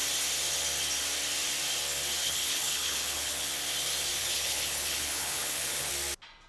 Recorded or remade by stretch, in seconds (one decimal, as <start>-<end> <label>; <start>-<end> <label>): 0.0-2.2 recorded; 2.2-3.5 remade; 3.5-4.2 recorded; 4.2-5.9 remade; 5.9-6.5 recorded